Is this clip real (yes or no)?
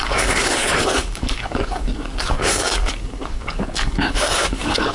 no